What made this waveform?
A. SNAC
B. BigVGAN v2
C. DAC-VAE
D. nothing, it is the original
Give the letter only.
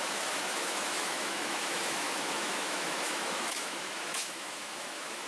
C